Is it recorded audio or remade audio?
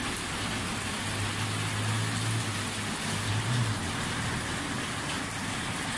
recorded